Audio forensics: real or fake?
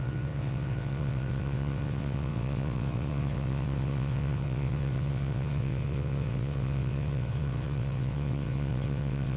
fake